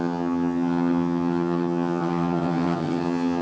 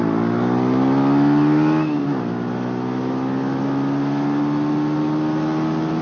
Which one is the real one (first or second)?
second